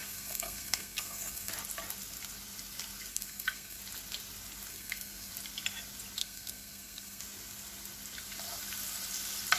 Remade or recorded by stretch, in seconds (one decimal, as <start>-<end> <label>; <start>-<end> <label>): 0.0-1.5 remade; 1.5-3.1 recorded; 3.1-3.8 remade; 3.8-4.7 recorded; 4.7-5.3 remade; 5.3-6.2 recorded; 6.2-7.2 remade; 7.2-9.6 recorded